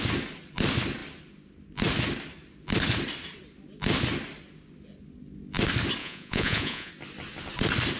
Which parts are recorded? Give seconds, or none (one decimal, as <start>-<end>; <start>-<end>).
0.0-6.0; 6.9-8.0